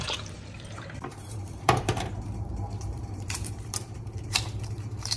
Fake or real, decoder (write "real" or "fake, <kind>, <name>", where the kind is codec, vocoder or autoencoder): fake, vocoder, BigVGAN v2